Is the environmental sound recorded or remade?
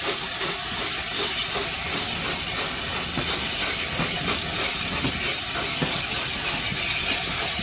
recorded